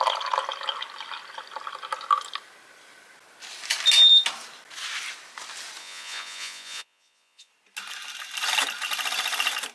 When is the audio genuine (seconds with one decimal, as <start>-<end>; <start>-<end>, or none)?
0.0-5.8; 7.5-9.7